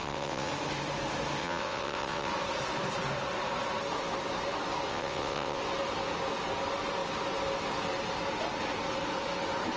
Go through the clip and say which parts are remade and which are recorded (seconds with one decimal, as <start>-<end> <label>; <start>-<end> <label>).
0.0-0.5 remade; 0.5-1.4 recorded; 1.4-2.3 remade; 2.3-4.9 recorded; 4.9-5.6 remade; 5.6-9.8 recorded